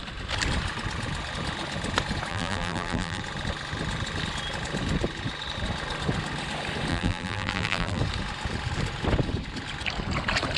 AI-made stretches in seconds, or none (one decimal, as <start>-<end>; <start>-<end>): 2.3-3.2; 6.9-8.0